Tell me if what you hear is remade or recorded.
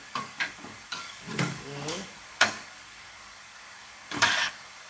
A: remade